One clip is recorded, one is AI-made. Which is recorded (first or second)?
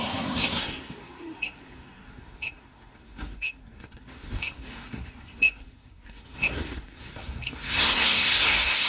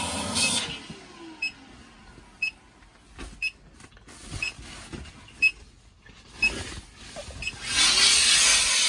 second